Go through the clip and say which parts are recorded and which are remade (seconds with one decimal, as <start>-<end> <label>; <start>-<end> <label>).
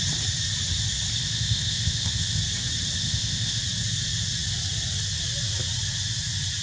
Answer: 0.0-1.2 recorded; 1.2-2.4 remade; 2.4-3.0 recorded; 3.0-3.6 remade; 3.6-6.6 recorded